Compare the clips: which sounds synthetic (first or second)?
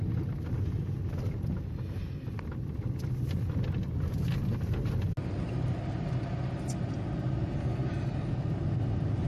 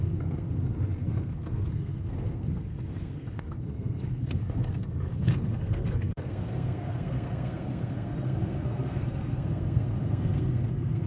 second